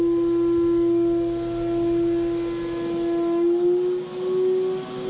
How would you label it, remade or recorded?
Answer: recorded